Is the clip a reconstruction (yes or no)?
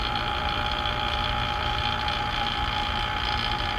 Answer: yes